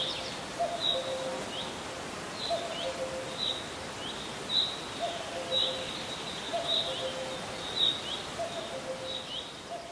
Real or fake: real